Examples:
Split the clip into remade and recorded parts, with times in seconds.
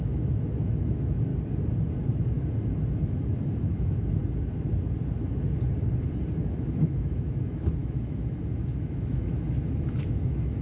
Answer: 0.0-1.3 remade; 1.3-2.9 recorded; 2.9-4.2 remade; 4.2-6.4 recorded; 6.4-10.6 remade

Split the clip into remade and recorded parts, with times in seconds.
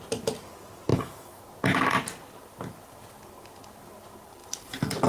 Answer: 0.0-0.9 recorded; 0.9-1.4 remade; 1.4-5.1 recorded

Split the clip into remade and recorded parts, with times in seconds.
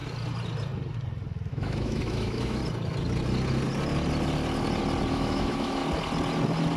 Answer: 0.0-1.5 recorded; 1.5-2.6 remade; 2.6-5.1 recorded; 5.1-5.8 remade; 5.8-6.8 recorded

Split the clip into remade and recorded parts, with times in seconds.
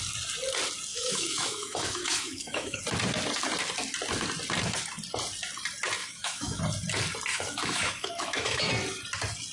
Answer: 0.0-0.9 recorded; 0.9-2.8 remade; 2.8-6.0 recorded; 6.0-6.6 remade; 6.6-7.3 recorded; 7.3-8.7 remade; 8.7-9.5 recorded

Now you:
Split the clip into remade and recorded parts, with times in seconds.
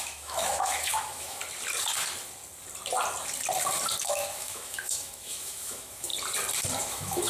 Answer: 0.0-1.4 remade; 1.4-4.0 recorded; 4.0-6.1 remade; 6.1-6.8 recorded; 6.8-7.3 remade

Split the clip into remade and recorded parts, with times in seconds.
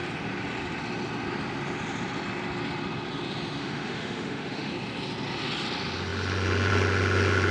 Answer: 0.0-3.6 recorded; 3.6-4.7 remade; 4.7-7.5 recorded